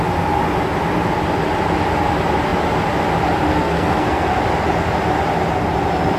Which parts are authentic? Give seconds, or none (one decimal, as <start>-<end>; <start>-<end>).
0.0-3.5; 4.4-6.2